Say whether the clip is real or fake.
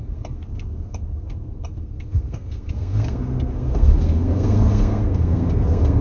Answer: fake